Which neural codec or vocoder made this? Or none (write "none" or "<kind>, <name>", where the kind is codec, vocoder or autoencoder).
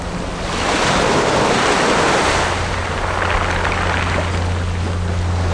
none